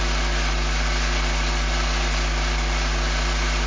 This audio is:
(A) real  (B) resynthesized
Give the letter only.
A